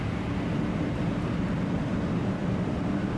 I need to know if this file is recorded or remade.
recorded